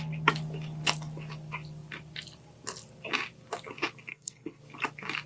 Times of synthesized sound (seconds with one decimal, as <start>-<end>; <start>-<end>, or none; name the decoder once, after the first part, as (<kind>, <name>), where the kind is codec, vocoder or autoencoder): 4.1-4.6 (codec, SNAC)

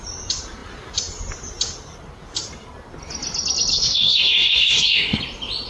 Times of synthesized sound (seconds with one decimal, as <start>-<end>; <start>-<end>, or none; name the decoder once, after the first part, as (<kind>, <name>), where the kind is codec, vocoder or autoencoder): 3.7-5.2 (codec, SNAC)